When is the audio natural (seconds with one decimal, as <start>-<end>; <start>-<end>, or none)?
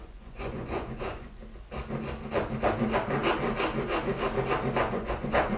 1.4-4.8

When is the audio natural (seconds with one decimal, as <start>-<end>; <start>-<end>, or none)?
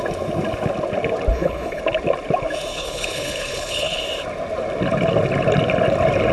0.0-1.3; 1.8-2.7; 4.0-6.3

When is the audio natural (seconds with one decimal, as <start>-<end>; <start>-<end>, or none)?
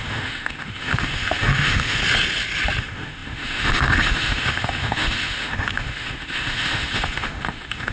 2.0-2.8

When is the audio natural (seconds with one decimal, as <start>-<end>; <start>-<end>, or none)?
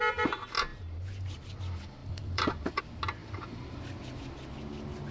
0.0-2.0; 2.8-3.2; 3.8-5.1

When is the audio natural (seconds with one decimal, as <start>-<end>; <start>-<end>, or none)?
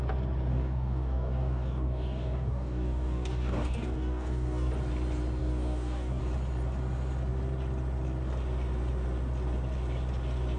0.0-0.5; 4.7-5.4; 6.2-10.6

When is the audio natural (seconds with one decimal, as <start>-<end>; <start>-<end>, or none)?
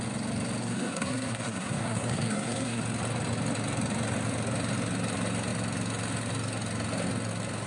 0.0-0.6; 2.8-7.7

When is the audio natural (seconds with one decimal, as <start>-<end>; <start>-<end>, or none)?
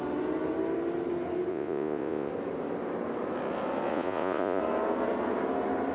0.0-1.5; 2.3-3.9; 4.6-5.9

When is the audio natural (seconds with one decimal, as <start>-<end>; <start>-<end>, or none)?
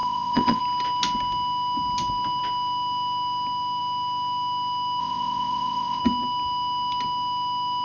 0.6-5.0; 6.0-7.8